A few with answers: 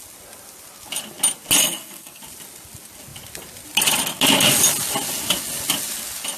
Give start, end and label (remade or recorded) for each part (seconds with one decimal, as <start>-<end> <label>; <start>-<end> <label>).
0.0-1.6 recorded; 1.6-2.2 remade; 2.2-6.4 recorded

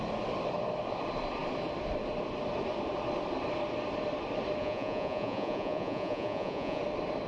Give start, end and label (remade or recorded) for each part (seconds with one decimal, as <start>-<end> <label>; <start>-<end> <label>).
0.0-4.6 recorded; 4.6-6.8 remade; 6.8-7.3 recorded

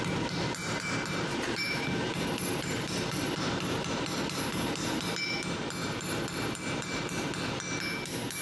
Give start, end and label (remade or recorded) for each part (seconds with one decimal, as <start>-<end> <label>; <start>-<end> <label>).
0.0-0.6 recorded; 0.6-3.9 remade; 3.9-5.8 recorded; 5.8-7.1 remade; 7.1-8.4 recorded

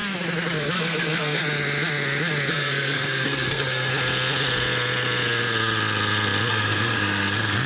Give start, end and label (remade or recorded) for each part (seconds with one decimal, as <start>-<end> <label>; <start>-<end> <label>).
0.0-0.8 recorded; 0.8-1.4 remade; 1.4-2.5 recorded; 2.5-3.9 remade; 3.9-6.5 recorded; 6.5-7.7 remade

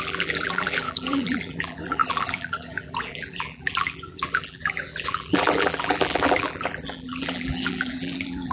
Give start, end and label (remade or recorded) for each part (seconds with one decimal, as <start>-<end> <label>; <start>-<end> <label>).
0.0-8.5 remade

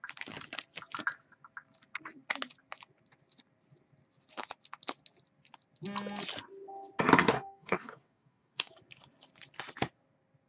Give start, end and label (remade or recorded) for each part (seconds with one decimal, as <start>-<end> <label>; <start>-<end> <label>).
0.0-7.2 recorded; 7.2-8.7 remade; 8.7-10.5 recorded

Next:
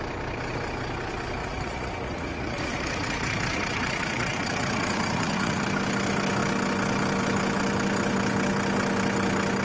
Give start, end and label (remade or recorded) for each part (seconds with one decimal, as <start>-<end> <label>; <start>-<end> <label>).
0.0-1.4 recorded; 1.4-5.6 remade; 5.6-9.6 recorded